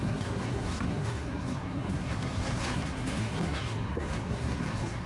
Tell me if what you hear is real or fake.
fake